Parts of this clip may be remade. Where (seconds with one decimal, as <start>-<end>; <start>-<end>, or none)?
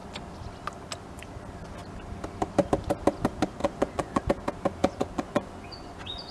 3.6-4.2; 4.8-6.3